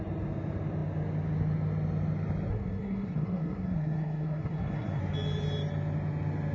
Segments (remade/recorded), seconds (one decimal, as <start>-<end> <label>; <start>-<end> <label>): 0.0-2.5 recorded; 2.5-5.0 remade; 5.0-6.5 recorded